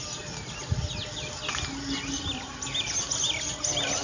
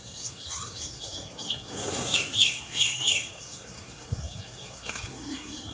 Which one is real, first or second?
first